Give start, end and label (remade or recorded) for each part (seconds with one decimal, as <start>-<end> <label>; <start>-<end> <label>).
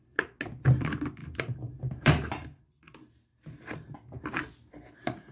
0.0-1.2 recorded; 1.2-2.6 remade; 2.6-5.3 recorded